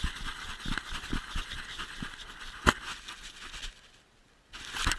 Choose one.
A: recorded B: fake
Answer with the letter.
A